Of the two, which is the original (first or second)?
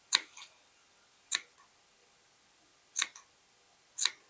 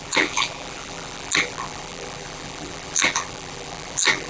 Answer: first